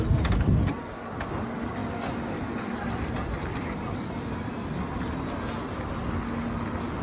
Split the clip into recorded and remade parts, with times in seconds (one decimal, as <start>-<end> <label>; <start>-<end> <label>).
0.0-7.0 recorded